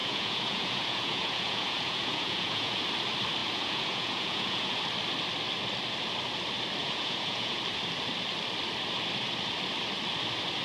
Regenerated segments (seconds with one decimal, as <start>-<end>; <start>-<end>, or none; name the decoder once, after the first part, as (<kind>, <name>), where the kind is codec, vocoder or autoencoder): 0.0-2.8 (vocoder, Vocos); 3.4-4.7; 6.8-7.6